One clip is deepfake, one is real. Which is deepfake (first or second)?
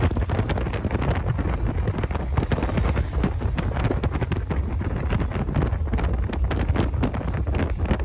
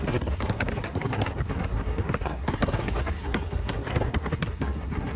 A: second